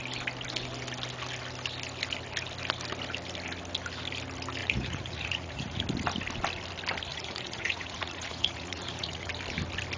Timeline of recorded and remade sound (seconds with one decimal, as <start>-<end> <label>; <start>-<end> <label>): 0.0-4.6 recorded; 4.6-5.8 remade; 5.8-7.1 recorded; 7.1-9.3 remade; 9.3-10.0 recorded